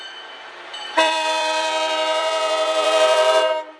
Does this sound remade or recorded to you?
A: remade